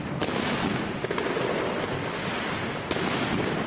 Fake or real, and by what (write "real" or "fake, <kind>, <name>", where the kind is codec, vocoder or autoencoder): fake, vocoder, BigVGAN v2